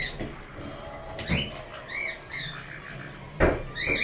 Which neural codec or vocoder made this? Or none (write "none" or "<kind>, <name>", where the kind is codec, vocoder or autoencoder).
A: none